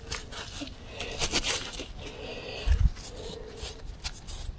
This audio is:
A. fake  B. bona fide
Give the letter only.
B